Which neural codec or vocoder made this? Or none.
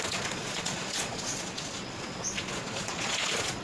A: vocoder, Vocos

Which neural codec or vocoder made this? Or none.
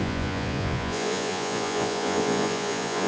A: vocoder, Vocos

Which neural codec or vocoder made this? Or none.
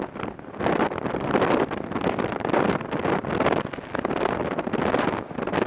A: none